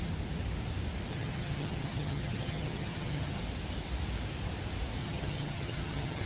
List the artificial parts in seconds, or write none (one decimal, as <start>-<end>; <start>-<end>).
1.1-3.4; 5.0-6.3